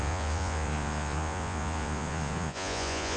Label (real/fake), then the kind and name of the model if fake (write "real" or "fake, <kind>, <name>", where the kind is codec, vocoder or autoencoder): fake, vocoder, Vocos